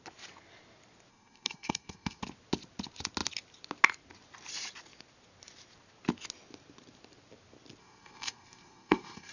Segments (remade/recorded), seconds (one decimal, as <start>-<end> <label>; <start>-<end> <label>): 0.0-1.1 recorded; 1.1-2.2 remade; 2.2-7.8 recorded; 7.8-9.3 remade